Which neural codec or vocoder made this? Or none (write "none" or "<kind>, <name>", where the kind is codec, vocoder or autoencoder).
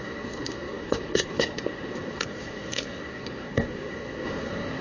codec, SNAC